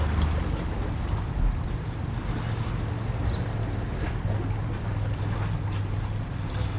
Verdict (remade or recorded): recorded